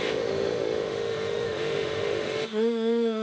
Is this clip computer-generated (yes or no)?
yes